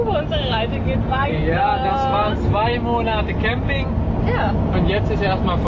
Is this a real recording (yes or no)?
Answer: yes